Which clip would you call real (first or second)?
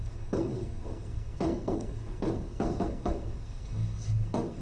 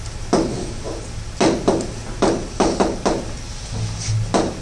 second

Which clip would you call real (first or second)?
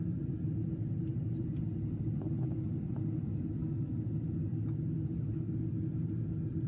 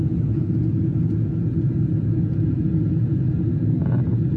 first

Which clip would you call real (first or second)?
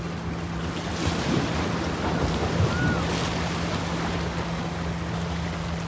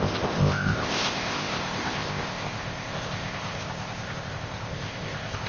first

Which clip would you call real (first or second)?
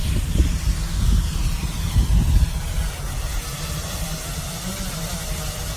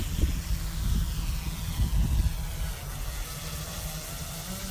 second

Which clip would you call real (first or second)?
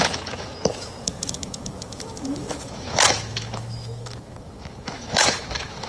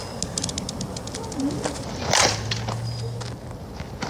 second